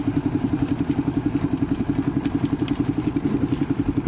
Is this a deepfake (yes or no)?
yes